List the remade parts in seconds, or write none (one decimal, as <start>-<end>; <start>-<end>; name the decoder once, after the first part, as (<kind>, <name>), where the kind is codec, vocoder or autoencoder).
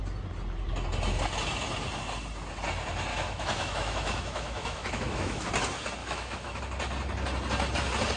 3.1-5.5 (autoencoder, DAC-VAE); 6.0-6.6